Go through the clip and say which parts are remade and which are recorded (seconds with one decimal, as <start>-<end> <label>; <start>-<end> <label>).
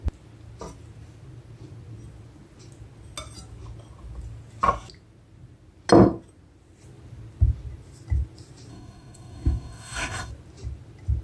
0.0-8.7 recorded; 8.7-10.3 remade; 10.3-11.2 recorded